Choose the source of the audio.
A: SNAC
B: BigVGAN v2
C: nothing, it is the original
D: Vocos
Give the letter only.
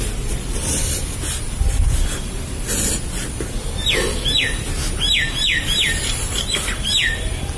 B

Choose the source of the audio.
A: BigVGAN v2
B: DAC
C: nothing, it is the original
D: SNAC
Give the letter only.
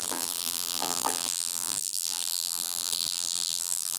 A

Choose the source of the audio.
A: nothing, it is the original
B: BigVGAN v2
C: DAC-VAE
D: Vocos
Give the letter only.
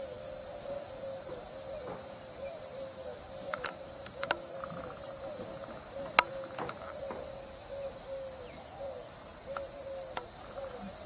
A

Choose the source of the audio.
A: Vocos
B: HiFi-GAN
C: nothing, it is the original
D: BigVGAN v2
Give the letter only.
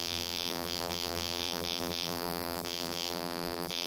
D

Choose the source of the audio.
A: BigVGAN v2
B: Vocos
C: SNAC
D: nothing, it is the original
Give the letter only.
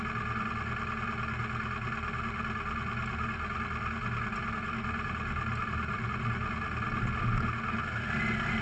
D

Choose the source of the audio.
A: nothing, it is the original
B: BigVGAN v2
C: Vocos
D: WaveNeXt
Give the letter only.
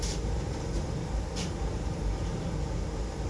B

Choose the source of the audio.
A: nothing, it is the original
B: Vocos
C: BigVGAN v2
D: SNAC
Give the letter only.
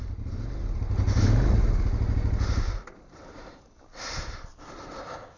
A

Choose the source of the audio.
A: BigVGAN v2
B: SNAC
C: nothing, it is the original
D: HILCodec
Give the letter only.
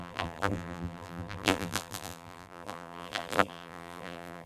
A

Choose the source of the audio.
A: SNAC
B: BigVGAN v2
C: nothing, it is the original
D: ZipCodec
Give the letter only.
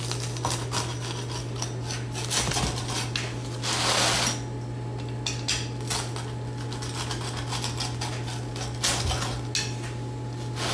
C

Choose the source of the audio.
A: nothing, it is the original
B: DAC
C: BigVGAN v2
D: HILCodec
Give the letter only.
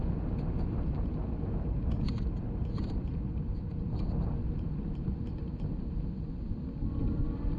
A